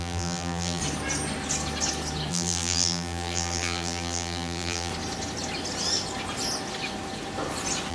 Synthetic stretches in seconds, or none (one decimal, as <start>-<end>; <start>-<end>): 0.0-0.8; 2.3-4.9